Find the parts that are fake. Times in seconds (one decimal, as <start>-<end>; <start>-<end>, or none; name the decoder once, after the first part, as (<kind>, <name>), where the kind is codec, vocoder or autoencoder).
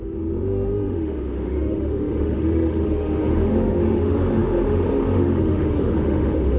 0.0-6.6 (autoencoder, DAC-VAE)